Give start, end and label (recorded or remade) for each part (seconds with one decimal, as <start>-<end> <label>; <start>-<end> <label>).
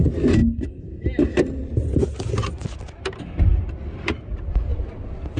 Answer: 0.0-5.4 recorded